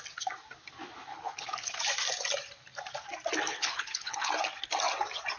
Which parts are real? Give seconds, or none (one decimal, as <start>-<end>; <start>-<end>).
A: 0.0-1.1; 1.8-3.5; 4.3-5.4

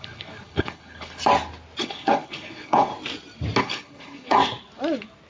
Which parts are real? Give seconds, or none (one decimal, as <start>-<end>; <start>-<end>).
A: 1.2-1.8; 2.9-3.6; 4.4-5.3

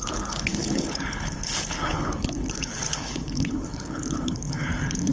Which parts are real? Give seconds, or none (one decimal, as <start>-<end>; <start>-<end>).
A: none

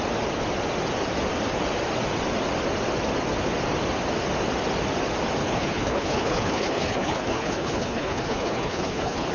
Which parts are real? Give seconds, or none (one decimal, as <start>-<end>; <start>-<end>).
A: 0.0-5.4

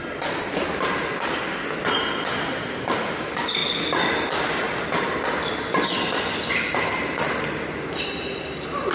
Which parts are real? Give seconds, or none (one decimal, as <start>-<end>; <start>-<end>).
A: 0.0-8.9

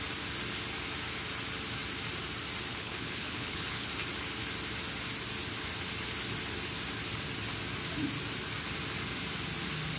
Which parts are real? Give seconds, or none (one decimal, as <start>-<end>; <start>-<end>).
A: 0.0-2.7; 3.9-10.0